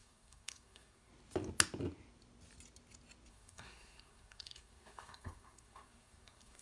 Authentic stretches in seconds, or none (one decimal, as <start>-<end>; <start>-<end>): 1.1-3.3